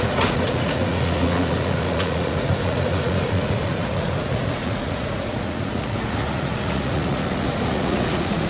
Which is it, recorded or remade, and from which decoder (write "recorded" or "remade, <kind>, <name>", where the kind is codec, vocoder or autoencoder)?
remade, vocoder, Vocos